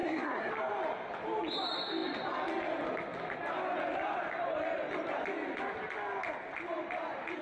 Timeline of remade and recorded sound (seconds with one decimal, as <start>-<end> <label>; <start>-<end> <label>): 0.0-0.5 remade; 0.5-7.4 recorded